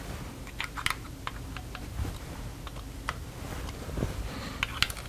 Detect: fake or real real